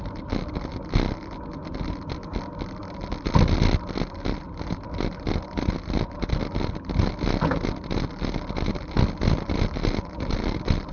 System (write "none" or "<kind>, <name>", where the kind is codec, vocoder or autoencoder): none